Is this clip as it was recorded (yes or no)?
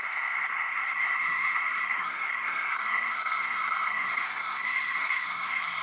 no